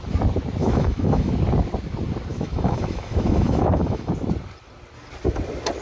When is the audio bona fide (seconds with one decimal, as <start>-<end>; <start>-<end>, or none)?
0.0-0.6; 1.3-2.3; 4.1-5.8

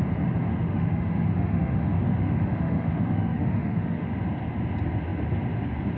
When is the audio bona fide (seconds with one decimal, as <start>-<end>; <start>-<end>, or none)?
0.0-0.5; 4.1-6.0